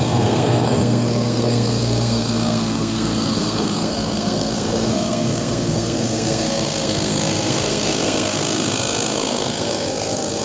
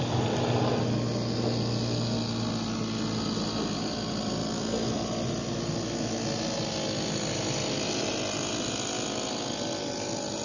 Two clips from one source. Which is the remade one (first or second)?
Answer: first